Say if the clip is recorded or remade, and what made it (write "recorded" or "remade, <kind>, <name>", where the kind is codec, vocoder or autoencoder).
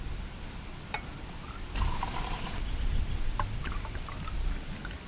recorded